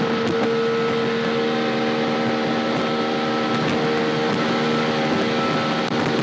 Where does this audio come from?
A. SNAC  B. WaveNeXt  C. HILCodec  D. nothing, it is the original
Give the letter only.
D